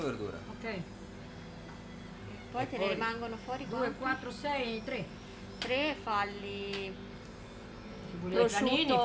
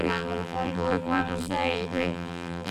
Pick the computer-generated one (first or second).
second